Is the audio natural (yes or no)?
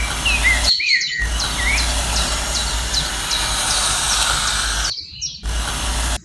yes